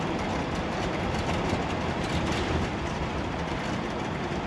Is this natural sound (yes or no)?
no